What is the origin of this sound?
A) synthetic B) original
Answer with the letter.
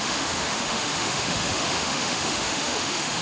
A